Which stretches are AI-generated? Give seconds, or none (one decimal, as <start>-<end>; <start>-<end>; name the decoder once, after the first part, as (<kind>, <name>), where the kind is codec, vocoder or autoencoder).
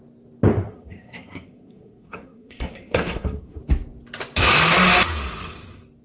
0.7-3.6 (codec, SNAC)